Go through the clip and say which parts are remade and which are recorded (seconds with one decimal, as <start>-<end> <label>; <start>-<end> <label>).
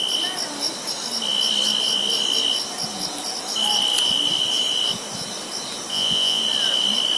0.0-5.9 recorded; 5.9-6.4 remade; 6.4-7.2 recorded